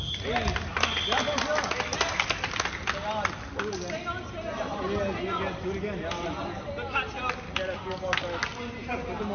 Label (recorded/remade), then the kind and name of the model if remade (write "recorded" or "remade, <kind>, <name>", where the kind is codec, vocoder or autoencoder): recorded